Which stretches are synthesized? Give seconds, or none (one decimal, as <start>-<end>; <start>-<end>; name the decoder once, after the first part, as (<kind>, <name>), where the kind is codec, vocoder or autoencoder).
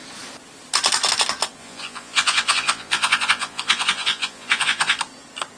1.6-5.0 (vocoder, Vocos)